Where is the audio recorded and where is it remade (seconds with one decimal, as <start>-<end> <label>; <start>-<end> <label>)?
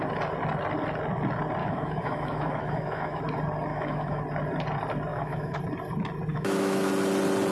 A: 0.0-1.6 recorded; 1.6-3.2 remade; 3.2-3.7 recorded; 3.7-4.2 remade; 4.2-5.1 recorded; 5.1-5.6 remade; 5.6-6.3 recorded; 6.3-6.9 remade; 6.9-7.5 recorded